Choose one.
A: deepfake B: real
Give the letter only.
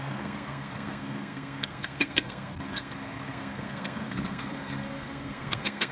A